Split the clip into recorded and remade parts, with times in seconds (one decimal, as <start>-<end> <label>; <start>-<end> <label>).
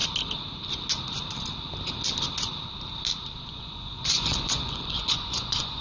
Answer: 0.0-3.4 recorded; 3.4-5.8 remade